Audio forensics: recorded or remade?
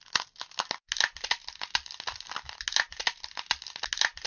recorded